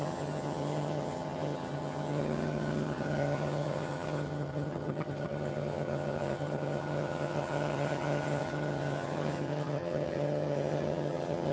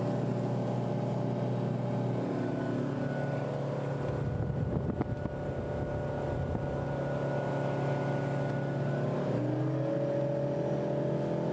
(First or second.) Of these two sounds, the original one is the second